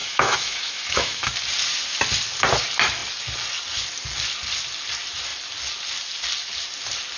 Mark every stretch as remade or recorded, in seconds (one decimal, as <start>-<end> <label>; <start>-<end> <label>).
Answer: 0.0-1.3 remade; 1.3-7.2 recorded